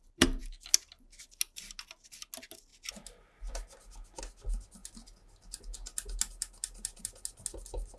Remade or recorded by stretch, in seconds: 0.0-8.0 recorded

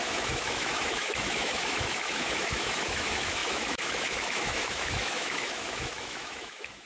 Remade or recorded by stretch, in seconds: 0.0-6.9 remade

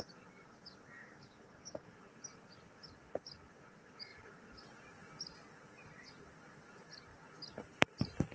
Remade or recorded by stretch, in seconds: 0.0-1.0 recorded; 1.0-1.9 remade; 1.9-8.3 recorded